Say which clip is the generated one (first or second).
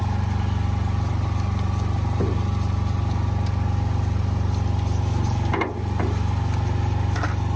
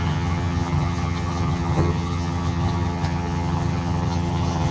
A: second